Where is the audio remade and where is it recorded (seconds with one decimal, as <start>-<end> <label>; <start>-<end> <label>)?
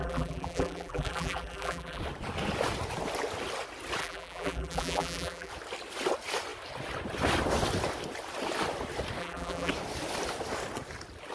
0.0-2.0 remade; 2.0-4.0 recorded; 4.0-5.5 remade; 5.5-9.2 recorded; 9.2-9.7 remade; 9.7-11.3 recorded